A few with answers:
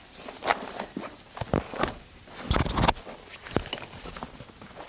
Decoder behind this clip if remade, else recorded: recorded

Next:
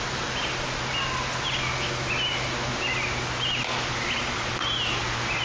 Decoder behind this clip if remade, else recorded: recorded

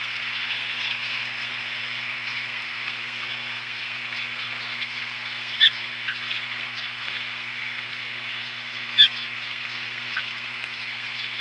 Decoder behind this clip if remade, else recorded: remade, codec, SNAC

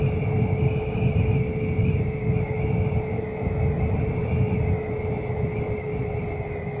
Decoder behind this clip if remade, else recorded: recorded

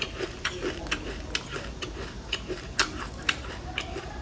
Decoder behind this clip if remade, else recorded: remade, vocoder, BigVGAN v2